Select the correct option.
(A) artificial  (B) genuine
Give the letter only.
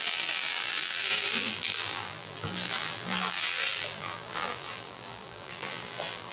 A